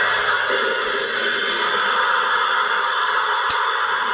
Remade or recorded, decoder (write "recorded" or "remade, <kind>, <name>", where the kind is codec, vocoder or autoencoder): recorded